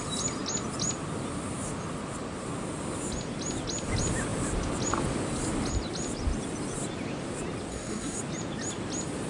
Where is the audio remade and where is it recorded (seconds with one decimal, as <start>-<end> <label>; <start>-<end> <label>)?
0.0-7.7 recorded; 7.7-8.2 remade; 8.2-9.3 recorded